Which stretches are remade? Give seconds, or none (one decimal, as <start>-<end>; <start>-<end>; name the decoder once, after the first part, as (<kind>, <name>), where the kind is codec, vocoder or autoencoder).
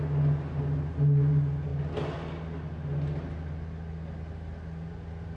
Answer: none